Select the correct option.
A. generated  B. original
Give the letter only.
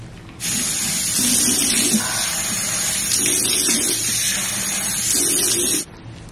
B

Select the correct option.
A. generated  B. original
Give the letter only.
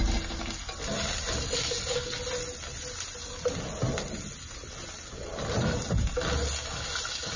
B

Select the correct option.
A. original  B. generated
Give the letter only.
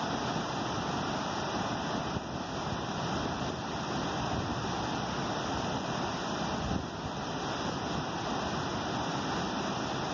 A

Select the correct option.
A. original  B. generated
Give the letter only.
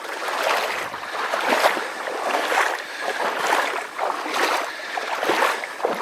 A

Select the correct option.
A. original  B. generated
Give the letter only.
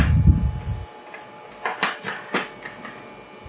A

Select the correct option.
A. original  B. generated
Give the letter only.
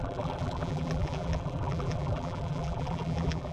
B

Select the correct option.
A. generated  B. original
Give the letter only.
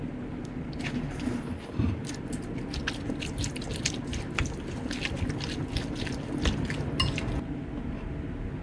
B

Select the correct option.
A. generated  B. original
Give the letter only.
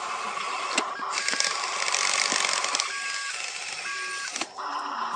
B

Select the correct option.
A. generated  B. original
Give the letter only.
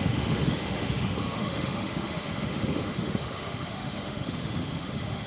A